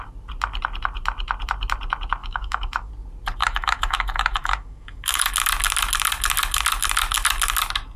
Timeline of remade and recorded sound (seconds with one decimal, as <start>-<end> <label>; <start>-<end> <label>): 0.0-2.2 recorded; 2.2-2.9 remade; 2.9-3.4 recorded; 3.4-5.3 remade; 5.3-8.0 recorded

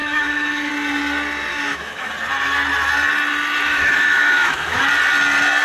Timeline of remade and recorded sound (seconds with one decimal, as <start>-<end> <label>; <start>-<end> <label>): 0.0-0.7 remade; 0.7-1.5 recorded; 1.5-2.1 remade; 2.1-3.7 recorded; 3.7-4.8 remade; 4.8-5.6 recorded